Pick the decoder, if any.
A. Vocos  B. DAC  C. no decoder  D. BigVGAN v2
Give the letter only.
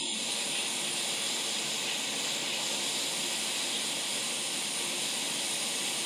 C